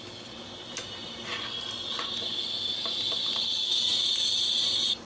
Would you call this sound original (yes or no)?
yes